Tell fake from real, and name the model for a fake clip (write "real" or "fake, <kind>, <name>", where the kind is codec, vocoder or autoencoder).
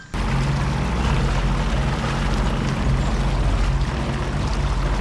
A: real